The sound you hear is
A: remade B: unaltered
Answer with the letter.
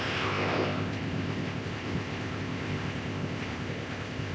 A